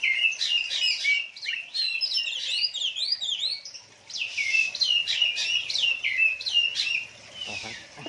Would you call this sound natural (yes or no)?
yes